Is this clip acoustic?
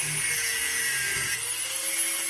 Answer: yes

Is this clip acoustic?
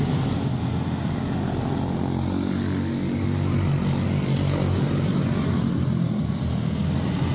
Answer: yes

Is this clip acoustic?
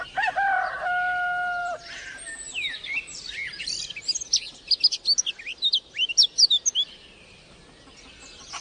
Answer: yes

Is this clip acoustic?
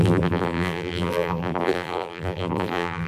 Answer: no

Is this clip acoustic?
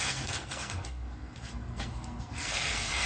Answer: no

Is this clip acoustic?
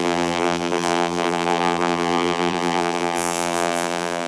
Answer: no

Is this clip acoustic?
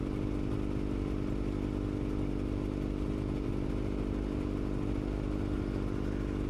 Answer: yes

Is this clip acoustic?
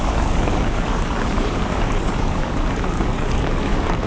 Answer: no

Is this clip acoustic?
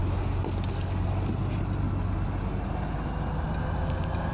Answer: yes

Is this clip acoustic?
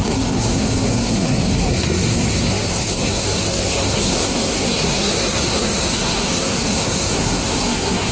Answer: no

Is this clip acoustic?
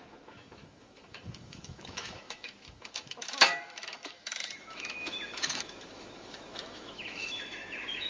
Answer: no